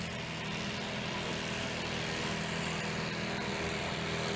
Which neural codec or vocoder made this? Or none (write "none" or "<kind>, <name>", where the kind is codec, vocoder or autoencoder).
none